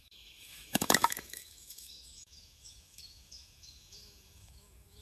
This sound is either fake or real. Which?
fake